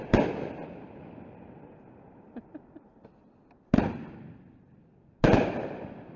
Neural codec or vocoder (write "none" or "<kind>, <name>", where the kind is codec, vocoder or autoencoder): none